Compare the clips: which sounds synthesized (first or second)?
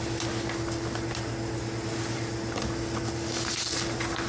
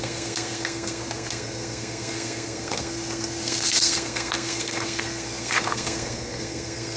second